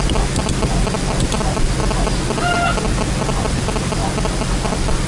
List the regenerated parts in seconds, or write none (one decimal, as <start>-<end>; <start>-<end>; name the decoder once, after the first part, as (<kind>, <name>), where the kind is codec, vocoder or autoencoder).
none